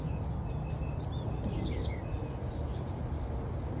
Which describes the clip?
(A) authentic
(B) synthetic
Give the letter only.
A